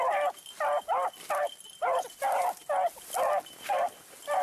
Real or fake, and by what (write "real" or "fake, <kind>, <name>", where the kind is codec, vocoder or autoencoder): real